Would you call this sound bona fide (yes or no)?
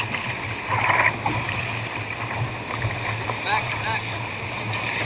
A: yes